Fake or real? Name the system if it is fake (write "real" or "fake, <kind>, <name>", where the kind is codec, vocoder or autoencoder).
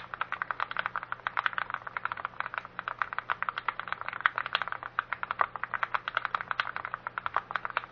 real